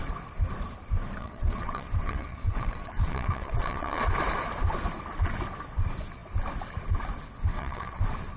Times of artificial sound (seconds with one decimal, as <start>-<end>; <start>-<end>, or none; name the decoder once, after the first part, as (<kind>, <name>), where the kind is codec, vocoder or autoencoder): 1.2-4.0 (vocoder, WaveNeXt); 7.5-8.0